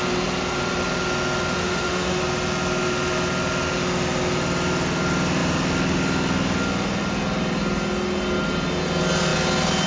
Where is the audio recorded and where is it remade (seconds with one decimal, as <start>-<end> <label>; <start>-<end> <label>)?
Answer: 0.0-1.6 recorded; 1.6-2.2 remade; 2.2-9.9 recorded